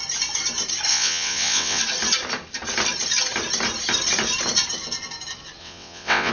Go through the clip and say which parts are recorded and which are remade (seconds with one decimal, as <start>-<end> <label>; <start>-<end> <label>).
0.0-0.9 recorded; 0.9-1.8 remade; 1.8-5.6 recorded; 5.6-6.3 remade